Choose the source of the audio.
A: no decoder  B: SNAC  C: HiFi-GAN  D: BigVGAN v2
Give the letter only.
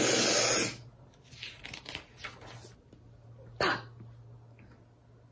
A